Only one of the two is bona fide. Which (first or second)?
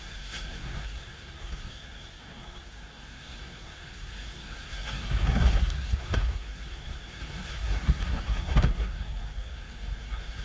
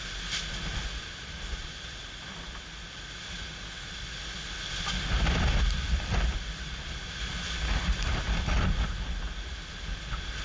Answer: second